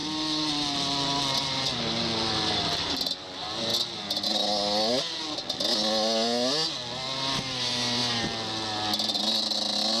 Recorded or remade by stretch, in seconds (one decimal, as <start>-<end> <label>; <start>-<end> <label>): 0.0-2.2 recorded; 2.2-3.0 remade; 3.0-10.0 recorded